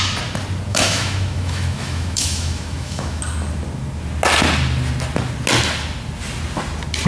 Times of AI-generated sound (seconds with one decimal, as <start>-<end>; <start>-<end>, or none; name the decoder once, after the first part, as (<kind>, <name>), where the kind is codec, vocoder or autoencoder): 0.7-3.2 (autoencoder, DAC-VAE)